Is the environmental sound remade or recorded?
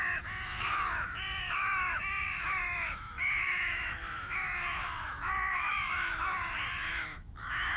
remade